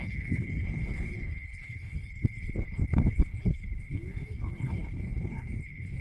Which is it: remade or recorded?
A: remade